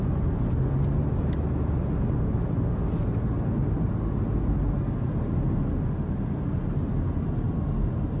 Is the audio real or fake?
real